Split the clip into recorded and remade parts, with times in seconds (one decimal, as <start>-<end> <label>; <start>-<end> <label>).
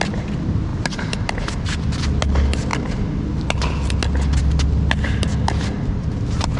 0.0-0.7 recorded; 0.7-1.3 remade; 1.3-6.6 recorded